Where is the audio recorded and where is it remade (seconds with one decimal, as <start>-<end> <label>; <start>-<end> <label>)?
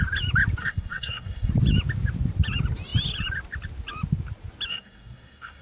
0.0-0.6 recorded; 0.6-1.5 remade; 1.5-4.7 recorded; 4.7-5.6 remade